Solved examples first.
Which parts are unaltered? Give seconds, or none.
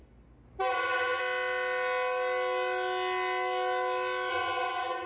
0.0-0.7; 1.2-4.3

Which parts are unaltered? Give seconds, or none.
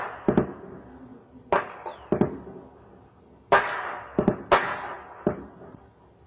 0.0-6.3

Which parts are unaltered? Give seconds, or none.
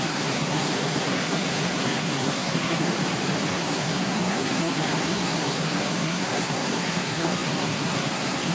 2.9-3.5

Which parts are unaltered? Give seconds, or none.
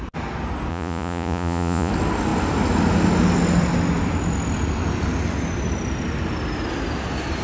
0.0-0.7; 1.9-7.4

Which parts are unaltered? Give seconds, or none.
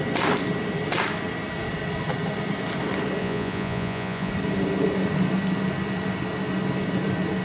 0.0-3.2; 4.3-7.4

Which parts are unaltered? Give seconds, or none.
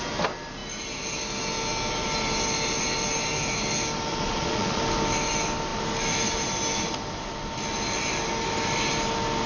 0.0-4.1; 4.8-9.5